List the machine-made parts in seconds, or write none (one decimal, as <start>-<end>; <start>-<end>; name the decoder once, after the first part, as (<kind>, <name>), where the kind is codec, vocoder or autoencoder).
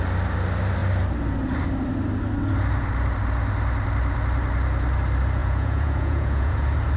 5.4-6.5 (vocoder, Vocos)